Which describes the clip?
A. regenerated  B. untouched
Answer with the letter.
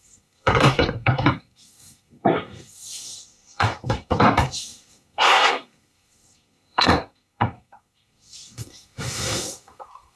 A